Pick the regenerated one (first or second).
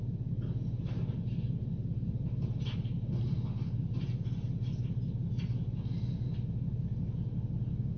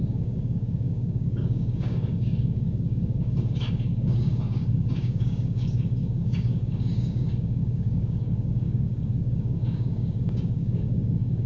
second